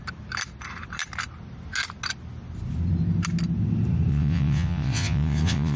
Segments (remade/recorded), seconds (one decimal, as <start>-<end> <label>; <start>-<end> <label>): 0.0-4.1 recorded; 4.1-5.8 remade